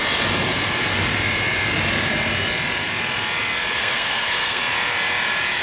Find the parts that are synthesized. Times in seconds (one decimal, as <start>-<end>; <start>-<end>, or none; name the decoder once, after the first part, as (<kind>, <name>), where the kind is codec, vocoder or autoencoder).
3.8-4.6 (codec, SNAC)